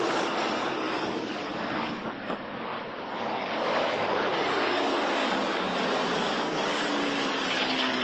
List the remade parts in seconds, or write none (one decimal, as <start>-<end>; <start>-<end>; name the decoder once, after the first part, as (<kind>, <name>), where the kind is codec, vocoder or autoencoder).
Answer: 0.0-2.7 (codec, DAC); 3.2-8.0